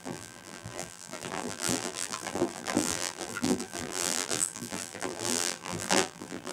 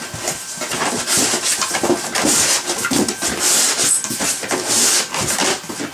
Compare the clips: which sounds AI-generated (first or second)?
first